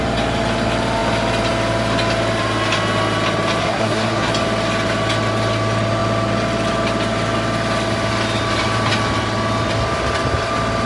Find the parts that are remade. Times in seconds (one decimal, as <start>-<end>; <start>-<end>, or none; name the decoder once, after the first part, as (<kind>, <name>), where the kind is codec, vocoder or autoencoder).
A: 3.6-4.3 (codec, SNAC)